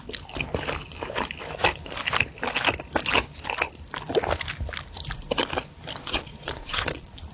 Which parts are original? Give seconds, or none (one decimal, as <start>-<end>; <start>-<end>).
0.0-6.0